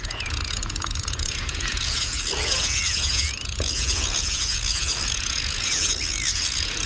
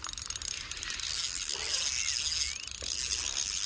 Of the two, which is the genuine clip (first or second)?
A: second